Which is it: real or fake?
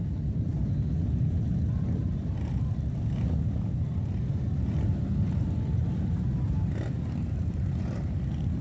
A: real